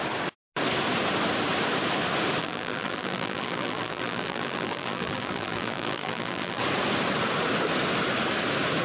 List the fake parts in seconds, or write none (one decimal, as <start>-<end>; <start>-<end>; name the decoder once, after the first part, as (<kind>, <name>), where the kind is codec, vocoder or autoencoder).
2.4-6.6 (vocoder, BigVGAN v2)